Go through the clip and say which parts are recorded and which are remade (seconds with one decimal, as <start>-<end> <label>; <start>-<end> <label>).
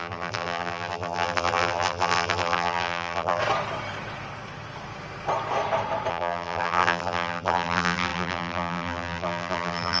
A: 0.0-3.4 remade; 3.4-6.1 recorded; 6.1-10.0 remade